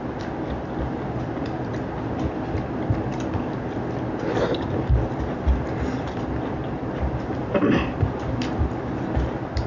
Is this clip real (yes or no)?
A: yes